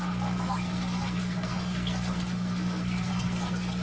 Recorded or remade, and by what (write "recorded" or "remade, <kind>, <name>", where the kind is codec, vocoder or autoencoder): remade, codec, SNAC